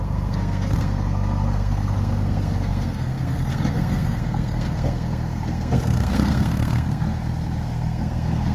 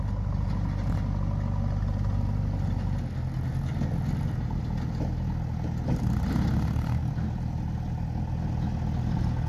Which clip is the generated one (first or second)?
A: first